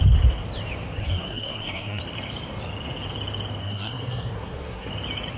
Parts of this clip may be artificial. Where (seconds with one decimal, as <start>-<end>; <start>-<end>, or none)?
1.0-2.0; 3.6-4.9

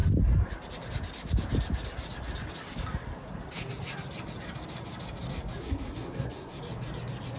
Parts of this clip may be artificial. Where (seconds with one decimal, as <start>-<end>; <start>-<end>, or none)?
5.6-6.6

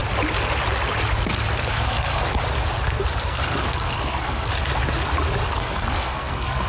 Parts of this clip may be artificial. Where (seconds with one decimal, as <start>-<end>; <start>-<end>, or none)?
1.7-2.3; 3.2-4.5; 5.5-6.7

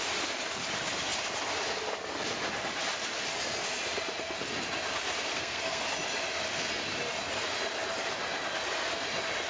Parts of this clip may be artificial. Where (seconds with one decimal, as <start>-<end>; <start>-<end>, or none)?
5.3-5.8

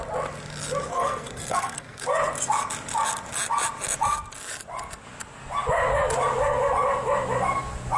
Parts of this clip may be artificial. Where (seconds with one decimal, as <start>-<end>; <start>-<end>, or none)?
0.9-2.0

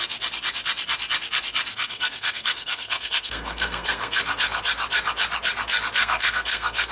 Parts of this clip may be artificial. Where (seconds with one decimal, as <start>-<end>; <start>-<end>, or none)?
1.7-4.2; 6.0-6.9